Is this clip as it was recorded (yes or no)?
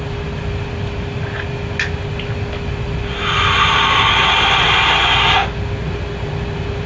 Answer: yes